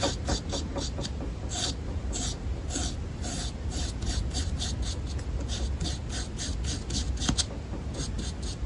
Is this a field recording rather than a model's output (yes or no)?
yes